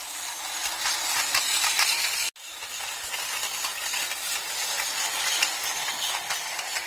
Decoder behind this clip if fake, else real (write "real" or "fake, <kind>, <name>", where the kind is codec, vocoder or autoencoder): real